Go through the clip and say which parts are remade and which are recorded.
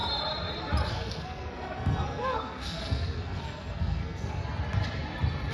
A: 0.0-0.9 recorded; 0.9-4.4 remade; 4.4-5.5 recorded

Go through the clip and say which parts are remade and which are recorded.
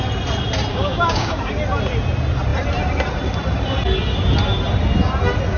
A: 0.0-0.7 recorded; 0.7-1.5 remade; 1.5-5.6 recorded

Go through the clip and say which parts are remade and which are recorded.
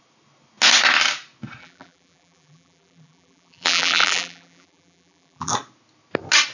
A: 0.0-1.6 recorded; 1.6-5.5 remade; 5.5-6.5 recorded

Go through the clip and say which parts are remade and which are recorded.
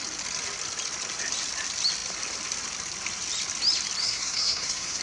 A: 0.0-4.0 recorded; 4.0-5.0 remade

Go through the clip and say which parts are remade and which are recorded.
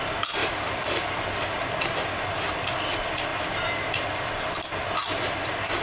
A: 0.0-0.4 recorded; 0.4-1.6 remade; 1.6-3.3 recorded; 3.3-4.8 remade; 4.8-5.8 recorded